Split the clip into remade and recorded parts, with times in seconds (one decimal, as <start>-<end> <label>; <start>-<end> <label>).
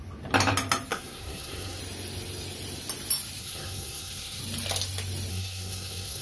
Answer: 0.0-0.9 recorded; 0.9-1.8 remade; 1.8-3.4 recorded; 3.4-4.4 remade; 4.4-5.3 recorded; 5.3-6.2 remade